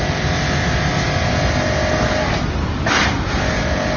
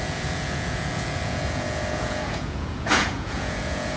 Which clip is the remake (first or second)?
second